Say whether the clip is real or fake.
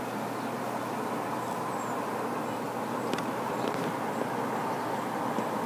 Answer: real